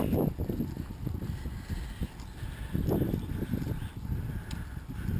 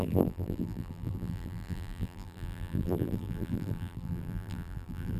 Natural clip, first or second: first